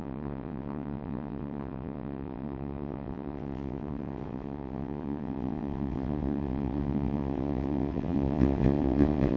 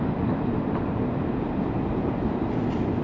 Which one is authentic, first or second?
second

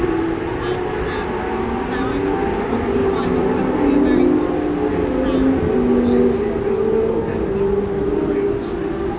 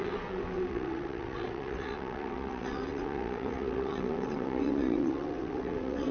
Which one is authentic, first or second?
first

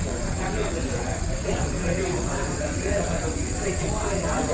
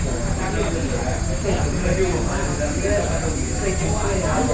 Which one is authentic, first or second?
second